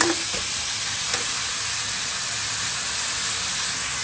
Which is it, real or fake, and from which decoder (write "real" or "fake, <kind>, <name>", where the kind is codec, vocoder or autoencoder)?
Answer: real